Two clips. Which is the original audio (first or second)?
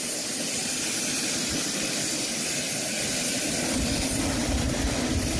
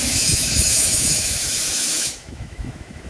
first